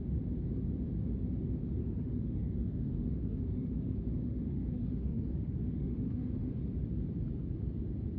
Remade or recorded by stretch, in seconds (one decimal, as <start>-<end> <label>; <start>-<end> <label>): 0.0-1.8 recorded; 1.8-6.6 remade; 6.6-8.2 recorded